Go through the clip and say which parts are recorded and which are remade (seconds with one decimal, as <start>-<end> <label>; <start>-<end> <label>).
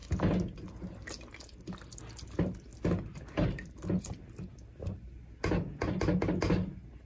0.0-7.1 recorded